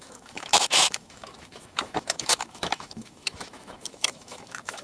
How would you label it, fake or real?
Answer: fake